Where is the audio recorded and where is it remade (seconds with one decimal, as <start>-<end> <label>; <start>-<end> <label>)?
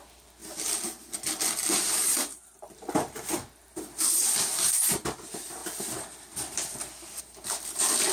0.0-0.4 remade; 0.4-3.5 recorded; 3.5-8.1 remade